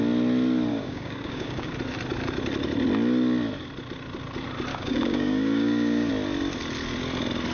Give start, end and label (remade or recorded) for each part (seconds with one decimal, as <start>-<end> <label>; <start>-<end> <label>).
0.0-0.7 recorded; 0.7-1.7 remade; 1.7-4.7 recorded; 4.7-6.1 remade; 6.1-7.5 recorded